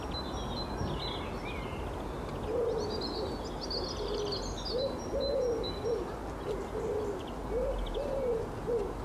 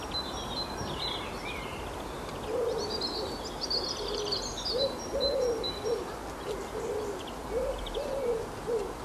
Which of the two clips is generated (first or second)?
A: second